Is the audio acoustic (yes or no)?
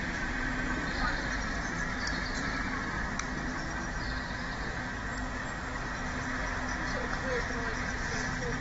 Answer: yes